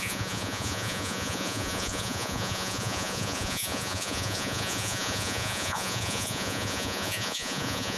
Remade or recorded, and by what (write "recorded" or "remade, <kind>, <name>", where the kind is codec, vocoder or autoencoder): remade, vocoder, Vocos